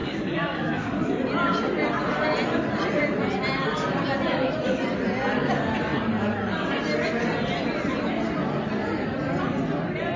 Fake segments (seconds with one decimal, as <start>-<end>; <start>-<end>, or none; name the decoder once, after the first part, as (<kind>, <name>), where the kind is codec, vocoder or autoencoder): 0.0-1.1 (codec, DAC)